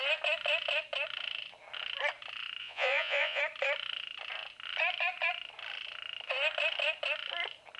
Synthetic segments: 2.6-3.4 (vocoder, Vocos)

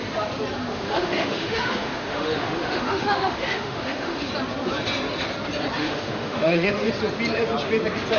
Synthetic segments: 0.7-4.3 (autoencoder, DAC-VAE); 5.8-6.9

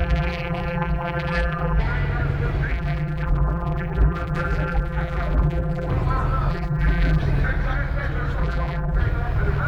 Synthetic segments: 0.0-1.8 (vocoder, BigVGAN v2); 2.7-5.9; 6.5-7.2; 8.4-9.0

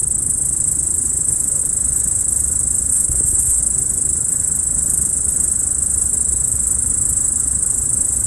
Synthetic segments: 2.9-3.6 (codec, SNAC)

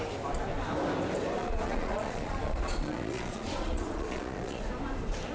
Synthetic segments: 1.4-4.6 (vocoder, Vocos)

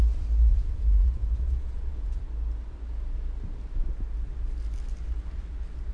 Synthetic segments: 0.5-2.2 (vocoder, Vocos)

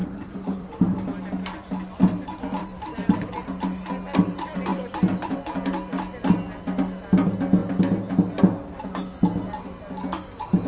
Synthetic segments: 0.0-0.8 (vocoder, BigVGAN v2); 2.6-3.3; 4.7-5.4

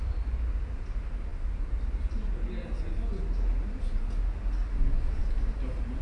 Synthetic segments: none